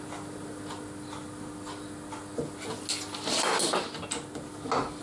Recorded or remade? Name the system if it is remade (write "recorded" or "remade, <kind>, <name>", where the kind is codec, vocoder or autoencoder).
recorded